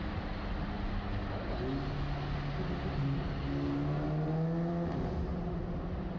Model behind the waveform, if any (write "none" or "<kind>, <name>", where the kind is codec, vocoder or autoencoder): none